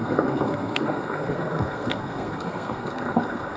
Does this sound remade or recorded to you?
remade